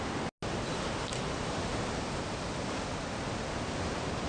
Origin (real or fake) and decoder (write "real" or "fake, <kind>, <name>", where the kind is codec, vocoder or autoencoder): real